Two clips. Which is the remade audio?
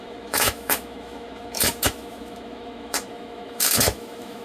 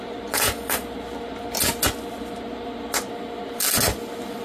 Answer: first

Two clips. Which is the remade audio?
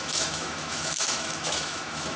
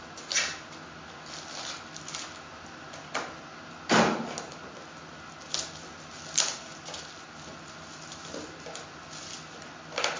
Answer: first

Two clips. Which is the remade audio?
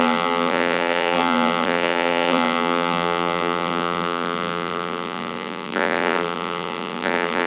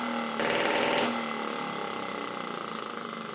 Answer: first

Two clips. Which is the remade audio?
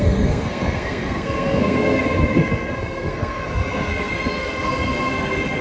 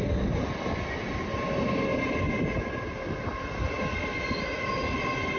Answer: first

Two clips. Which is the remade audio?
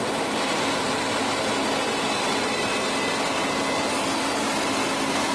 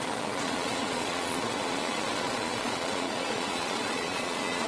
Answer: second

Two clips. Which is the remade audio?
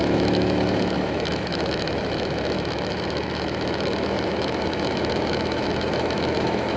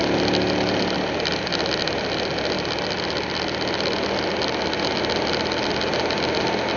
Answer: first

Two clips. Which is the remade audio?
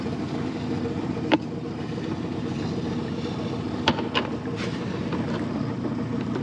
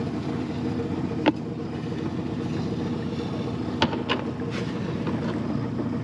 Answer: first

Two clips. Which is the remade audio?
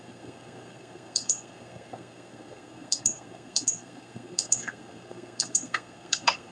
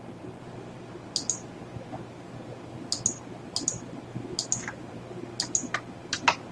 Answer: first